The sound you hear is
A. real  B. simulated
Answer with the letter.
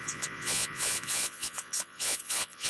B